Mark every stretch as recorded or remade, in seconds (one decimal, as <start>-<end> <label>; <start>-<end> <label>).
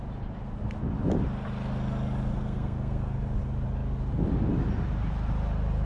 0.0-2.3 recorded; 2.3-3.2 remade; 3.2-5.9 recorded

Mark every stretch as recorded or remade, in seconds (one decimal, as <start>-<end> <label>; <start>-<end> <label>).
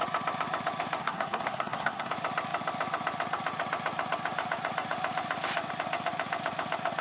0.0-1.0 recorded; 1.0-2.1 remade; 2.1-7.0 recorded